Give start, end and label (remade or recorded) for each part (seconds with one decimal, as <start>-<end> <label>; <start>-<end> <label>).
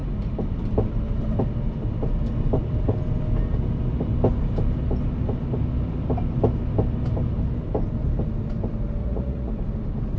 0.0-9.0 recorded; 9.0-9.5 remade; 9.5-10.2 recorded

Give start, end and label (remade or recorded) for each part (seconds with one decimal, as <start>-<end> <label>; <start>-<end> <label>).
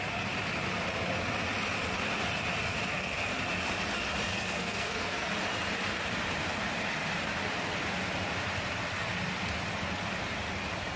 0.0-2.9 recorded; 2.9-3.4 remade; 3.4-4.3 recorded; 4.3-5.3 remade; 5.3-11.0 recorded